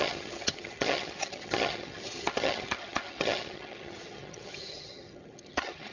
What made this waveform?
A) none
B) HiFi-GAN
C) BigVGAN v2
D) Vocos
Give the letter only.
B